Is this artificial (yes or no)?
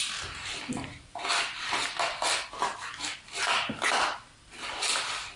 no